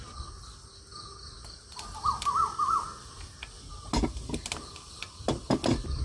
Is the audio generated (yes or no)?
no